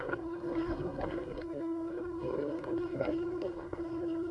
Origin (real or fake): fake